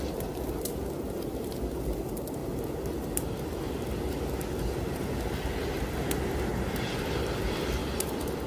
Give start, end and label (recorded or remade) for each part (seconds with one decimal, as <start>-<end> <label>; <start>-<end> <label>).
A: 0.0-2.4 remade; 2.4-7.0 recorded; 7.0-8.5 remade